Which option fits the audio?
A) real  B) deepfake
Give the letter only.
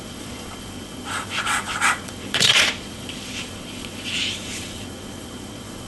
B